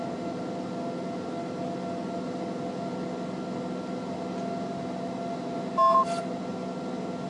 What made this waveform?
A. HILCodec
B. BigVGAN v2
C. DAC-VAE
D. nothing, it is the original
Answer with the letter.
D